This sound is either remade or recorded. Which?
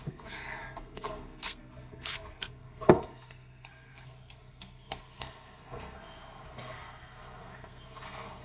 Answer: remade